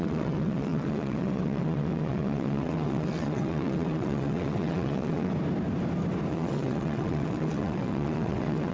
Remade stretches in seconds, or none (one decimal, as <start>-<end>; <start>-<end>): 0.0-5.3; 6.3-8.7